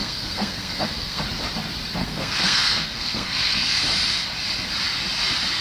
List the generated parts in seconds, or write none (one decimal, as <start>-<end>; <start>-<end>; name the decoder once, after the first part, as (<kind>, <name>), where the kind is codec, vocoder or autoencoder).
0.0-1.2 (codec, SNAC); 2.0-3.8

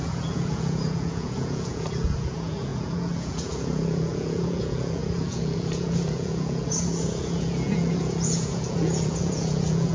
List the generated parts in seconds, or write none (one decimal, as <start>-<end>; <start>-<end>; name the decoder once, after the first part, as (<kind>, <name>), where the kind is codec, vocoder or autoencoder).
0.0-9.9 (vocoder, Vocos)

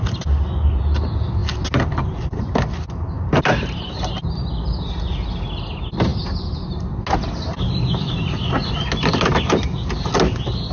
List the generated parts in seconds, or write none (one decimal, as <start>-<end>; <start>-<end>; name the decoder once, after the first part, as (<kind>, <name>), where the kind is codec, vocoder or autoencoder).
none